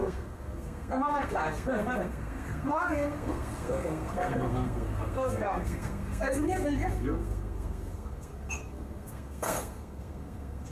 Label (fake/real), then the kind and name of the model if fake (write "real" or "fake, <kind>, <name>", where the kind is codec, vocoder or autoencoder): fake, codec, SNAC